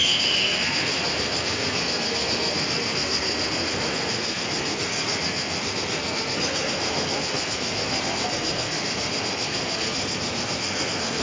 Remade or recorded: remade